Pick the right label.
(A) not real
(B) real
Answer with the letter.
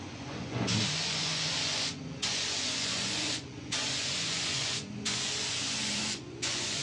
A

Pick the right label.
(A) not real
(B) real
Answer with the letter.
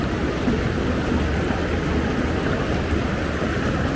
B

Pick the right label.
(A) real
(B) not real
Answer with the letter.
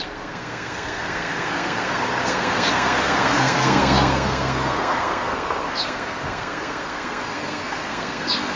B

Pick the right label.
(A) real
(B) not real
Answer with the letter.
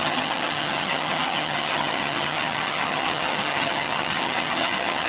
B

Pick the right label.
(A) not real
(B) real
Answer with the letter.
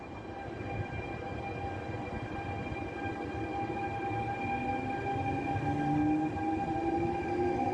B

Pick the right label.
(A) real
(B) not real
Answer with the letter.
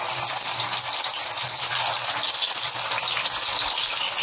A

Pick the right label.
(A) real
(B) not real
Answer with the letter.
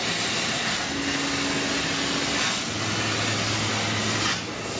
A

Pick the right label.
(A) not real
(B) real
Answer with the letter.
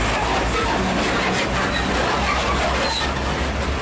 B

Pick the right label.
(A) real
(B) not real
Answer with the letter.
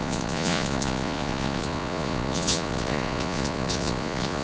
B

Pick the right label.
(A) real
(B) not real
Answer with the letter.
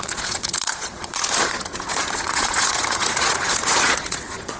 B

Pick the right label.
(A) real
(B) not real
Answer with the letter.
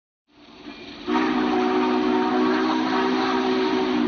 A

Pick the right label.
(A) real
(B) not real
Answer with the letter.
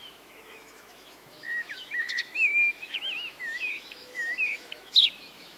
B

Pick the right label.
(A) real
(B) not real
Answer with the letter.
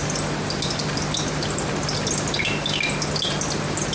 A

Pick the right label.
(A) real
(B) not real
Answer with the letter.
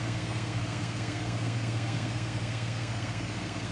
B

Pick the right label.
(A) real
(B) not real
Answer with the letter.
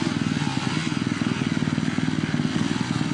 A